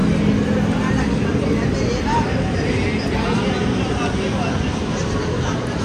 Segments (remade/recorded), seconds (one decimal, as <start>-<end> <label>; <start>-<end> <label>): 0.0-5.8 recorded